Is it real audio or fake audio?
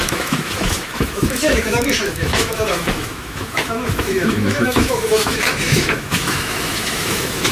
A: fake